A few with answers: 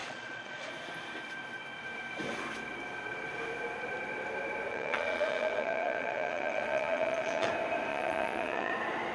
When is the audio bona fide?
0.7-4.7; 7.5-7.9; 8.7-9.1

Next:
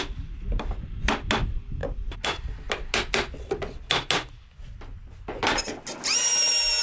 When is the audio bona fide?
0.0-6.8